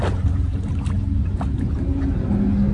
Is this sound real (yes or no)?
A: yes